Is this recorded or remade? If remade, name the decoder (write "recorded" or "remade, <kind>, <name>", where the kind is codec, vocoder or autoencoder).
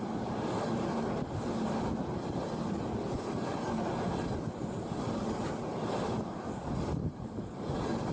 recorded